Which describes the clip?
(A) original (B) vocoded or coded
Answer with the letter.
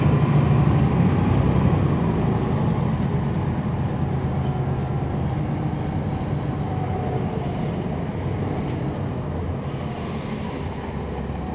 A